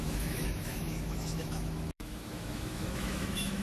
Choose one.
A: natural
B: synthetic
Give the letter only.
B